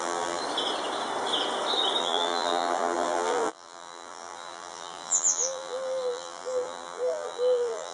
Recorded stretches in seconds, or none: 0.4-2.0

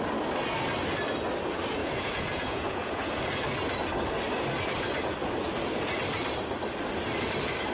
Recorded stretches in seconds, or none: 0.0-1.8; 3.1-7.7

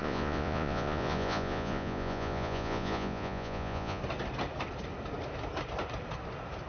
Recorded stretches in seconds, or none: 4.0-6.7

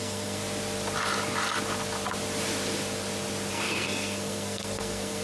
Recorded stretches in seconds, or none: 0.4-3.5

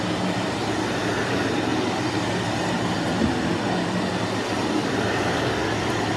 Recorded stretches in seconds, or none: 0.0-4.8; 5.4-6.2

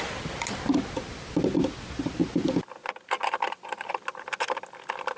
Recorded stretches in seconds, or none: 0.0-5.2